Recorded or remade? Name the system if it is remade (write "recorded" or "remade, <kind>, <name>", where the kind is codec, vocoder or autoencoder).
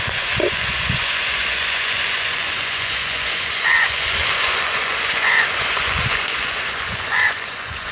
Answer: remade, vocoder, Vocos